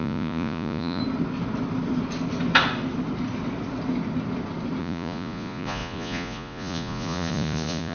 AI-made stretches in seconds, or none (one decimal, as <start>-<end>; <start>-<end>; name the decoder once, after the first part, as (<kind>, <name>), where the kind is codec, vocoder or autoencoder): 0.0-1.0 (vocoder, Vocos); 4.8-7.9

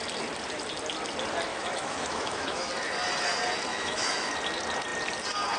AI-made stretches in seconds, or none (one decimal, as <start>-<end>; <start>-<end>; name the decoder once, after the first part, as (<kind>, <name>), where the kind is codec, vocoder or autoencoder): 1.5-2.7 (autoencoder, DAC-VAE); 3.7-4.3

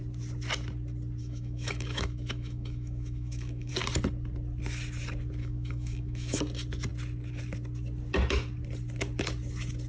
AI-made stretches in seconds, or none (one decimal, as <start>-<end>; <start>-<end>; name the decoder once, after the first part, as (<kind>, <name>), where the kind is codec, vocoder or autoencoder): 1.2-3.7 (autoencoder, DAC-VAE); 5.4-6.4

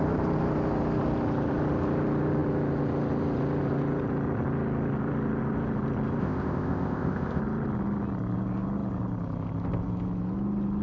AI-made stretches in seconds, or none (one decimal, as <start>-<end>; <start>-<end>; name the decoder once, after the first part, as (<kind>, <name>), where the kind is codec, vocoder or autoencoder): 6.2-7.4 (codec, ZipCodec)